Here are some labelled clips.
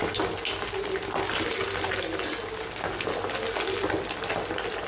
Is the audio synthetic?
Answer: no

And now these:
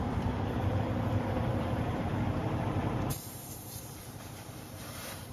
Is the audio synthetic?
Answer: yes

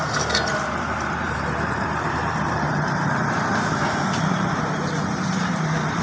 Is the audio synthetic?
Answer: yes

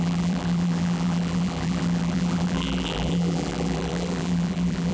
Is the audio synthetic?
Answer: yes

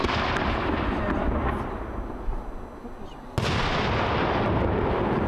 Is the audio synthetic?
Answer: no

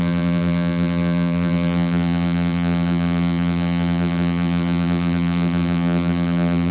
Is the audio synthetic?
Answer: yes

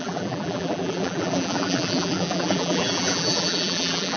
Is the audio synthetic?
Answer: yes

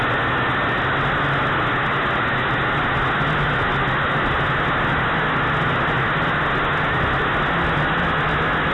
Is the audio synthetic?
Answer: no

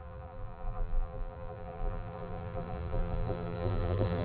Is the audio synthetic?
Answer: yes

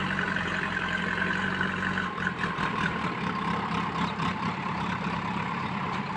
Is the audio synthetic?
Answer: yes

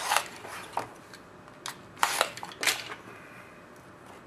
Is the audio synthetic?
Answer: no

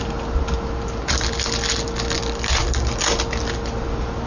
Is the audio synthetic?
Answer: no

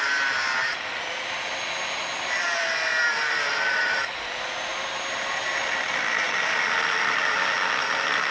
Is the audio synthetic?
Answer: yes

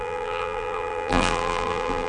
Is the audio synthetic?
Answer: yes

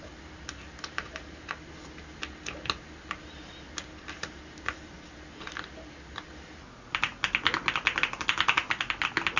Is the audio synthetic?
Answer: no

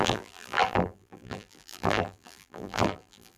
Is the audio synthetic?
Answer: yes